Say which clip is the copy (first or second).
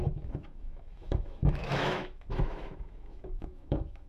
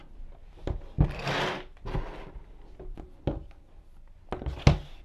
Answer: first